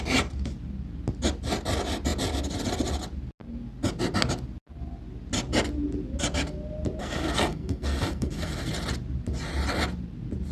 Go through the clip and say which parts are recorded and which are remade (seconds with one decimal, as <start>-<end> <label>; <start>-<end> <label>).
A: 0.0-7.0 recorded; 7.0-8.7 remade; 8.7-10.5 recorded